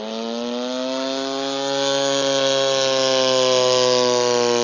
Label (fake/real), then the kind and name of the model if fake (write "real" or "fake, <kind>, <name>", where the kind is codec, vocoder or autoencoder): real